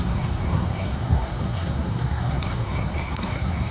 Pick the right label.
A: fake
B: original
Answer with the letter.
A